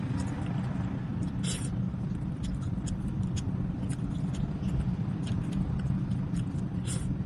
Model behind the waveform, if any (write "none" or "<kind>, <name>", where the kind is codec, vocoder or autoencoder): none